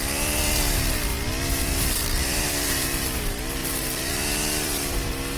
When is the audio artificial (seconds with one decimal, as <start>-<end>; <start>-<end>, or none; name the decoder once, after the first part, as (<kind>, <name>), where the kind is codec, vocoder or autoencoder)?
0.0-1.1 (vocoder, BigVGAN v2); 1.6-5.4